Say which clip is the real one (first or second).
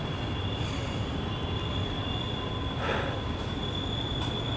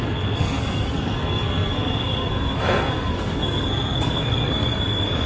first